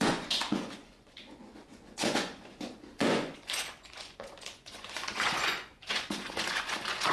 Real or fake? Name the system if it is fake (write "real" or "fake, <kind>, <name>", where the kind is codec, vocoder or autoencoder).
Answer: fake, vocoder, Vocos